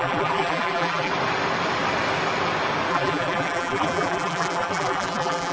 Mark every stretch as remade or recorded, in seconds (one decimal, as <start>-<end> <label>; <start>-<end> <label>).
0.0-1.1 remade; 1.1-2.9 recorded; 2.9-5.5 remade

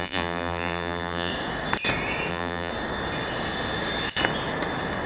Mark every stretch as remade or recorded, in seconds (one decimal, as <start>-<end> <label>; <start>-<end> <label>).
0.0-1.3 remade; 1.3-2.3 recorded; 2.3-2.7 remade; 2.7-5.1 recorded

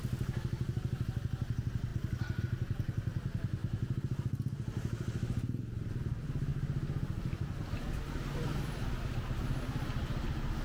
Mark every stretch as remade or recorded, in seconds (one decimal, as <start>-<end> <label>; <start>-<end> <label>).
0.0-10.6 recorded

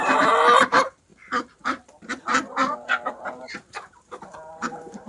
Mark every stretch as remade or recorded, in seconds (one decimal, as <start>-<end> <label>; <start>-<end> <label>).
0.0-0.6 recorded; 0.6-5.1 remade